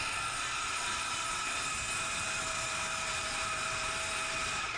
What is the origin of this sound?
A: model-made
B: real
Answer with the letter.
A